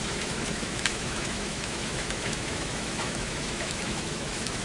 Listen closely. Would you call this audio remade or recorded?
remade